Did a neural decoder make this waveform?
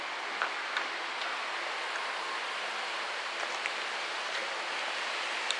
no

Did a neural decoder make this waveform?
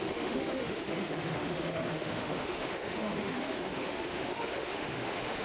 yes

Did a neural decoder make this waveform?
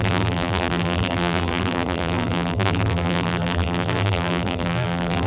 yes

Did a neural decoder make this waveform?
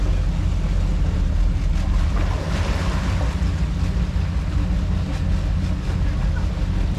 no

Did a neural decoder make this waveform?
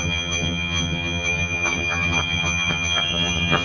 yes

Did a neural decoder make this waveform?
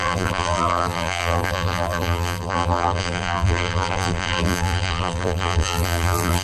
yes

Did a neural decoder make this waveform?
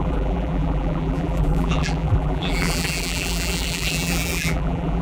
yes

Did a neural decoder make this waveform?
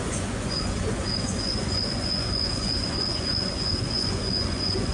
yes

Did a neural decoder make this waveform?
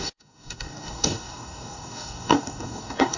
yes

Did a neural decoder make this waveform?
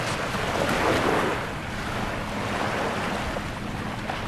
no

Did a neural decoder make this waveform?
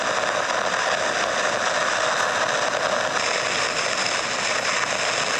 no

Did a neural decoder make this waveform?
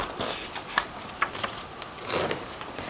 no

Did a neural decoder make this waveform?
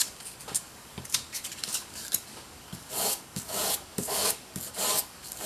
yes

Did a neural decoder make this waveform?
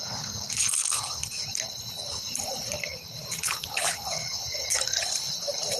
yes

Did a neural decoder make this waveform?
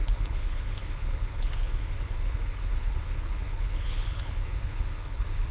yes